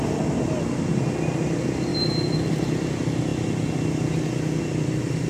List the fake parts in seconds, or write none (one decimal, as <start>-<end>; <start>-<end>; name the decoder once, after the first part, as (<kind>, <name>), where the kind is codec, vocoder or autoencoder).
none